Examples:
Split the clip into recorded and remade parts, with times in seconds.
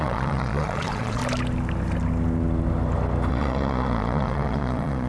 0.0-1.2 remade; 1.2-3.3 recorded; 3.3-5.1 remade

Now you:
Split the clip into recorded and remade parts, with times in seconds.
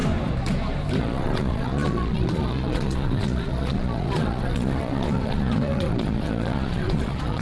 0.0-1.0 recorded; 1.0-7.4 remade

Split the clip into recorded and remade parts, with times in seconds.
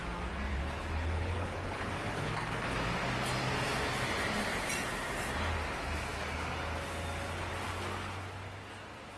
0.0-0.5 recorded; 0.5-1.9 remade; 1.9-9.2 recorded